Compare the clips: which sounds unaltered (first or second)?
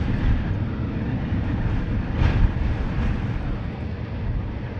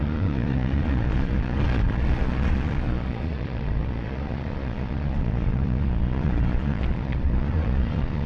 first